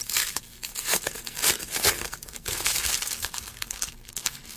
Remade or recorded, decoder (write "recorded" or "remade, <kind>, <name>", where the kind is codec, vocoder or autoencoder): remade, codec, SNAC